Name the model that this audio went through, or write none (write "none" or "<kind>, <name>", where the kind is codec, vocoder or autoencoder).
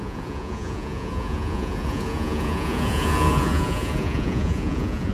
vocoder, Vocos